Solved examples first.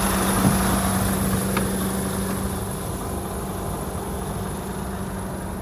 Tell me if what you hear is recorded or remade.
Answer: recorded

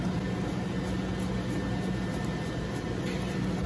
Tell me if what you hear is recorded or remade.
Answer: recorded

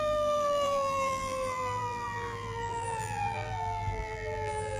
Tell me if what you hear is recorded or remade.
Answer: remade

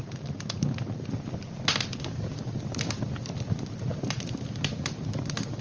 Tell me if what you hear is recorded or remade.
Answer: recorded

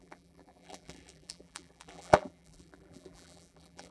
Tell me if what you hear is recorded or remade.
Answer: remade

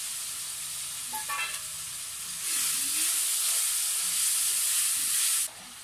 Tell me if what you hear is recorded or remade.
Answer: recorded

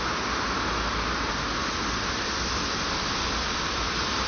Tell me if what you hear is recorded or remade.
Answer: recorded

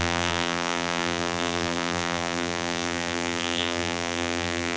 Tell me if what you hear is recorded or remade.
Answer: remade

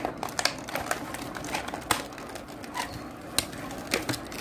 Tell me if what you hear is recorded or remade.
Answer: recorded